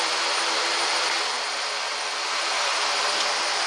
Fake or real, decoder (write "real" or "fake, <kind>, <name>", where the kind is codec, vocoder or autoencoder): fake, vocoder, BigVGAN v2